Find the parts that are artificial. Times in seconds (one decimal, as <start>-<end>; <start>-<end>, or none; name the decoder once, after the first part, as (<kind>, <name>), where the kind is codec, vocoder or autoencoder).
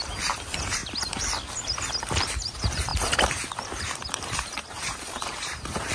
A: 0.0-0.8 (vocoder, BigVGAN v2); 2.1-5.9